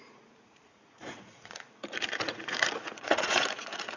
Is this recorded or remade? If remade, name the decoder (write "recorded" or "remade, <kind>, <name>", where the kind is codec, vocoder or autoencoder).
remade, vocoder, Vocos